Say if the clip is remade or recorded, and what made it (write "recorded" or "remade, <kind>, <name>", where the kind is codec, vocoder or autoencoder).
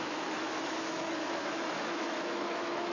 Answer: remade, autoencoder, DAC-VAE